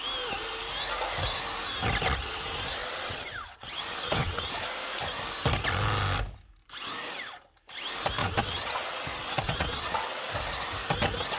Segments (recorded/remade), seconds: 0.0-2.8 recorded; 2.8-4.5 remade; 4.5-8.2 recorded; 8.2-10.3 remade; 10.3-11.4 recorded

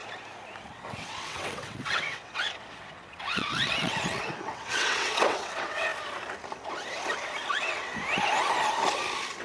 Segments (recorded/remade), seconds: 0.0-0.6 recorded; 0.6-5.9 remade; 5.9-7.5 recorded; 7.5-7.9 remade; 7.9-9.4 recorded

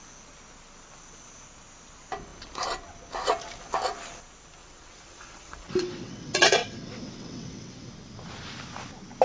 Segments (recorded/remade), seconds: 0.0-4.6 recorded; 4.6-7.9 remade; 7.9-9.2 recorded

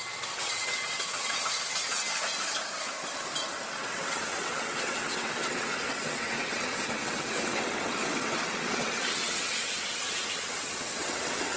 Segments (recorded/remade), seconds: 0.0-2.3 remade; 2.3-3.7 recorded; 3.7-11.6 remade

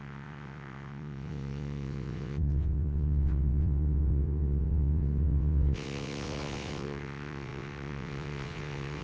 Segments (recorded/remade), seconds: 0.0-9.0 remade

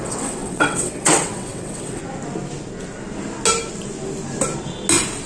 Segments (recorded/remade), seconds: 0.0-2.0 remade; 2.0-5.3 recorded

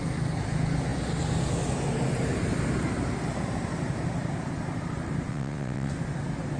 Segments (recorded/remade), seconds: 0.0-5.3 recorded; 5.3-5.9 remade; 5.9-6.6 recorded